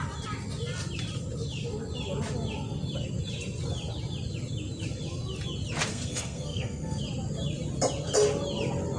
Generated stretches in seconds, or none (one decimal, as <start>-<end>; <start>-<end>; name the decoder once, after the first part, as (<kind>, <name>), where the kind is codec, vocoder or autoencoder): 5.9-7.0 (codec, SNAC)